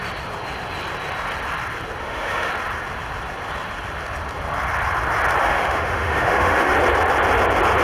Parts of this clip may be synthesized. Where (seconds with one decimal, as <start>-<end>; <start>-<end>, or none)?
2.0-2.5; 5.4-6.7